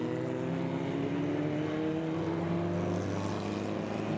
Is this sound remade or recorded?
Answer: recorded